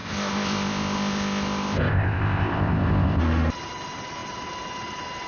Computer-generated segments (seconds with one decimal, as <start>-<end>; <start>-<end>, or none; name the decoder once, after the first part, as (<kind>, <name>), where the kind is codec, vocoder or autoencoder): 0.0-3.2 (codec, ZipCodec)

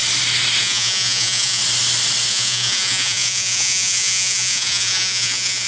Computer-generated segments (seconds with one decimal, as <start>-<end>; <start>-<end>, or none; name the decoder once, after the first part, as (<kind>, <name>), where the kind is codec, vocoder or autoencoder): 0.6-1.6 (vocoder, Vocos); 2.3-5.7

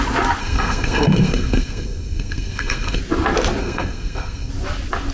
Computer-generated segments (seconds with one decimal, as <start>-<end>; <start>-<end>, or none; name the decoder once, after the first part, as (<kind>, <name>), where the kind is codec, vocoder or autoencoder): 0.4-3.0 (codec, SNAC); 3.6-4.5

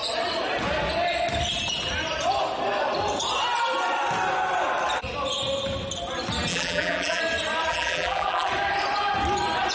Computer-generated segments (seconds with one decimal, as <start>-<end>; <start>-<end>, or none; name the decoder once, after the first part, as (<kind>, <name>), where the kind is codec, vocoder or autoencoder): 6.5-7.2 (vocoder, BigVGAN v2); 7.7-8.5

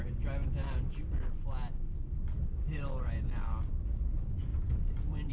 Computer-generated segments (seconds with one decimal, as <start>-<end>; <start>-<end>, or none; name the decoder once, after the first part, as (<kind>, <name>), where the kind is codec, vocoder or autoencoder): 4.5-5.3 (vocoder, BigVGAN v2)

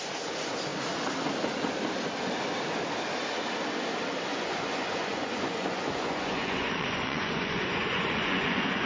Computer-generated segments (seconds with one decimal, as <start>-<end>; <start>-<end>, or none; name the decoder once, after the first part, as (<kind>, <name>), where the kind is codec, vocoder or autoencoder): 4.3-8.9 (vocoder, Vocos)